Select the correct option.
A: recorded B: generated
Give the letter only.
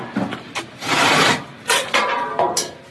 A